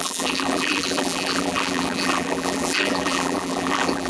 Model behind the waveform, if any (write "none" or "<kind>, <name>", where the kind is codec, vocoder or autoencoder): vocoder, BigVGAN v2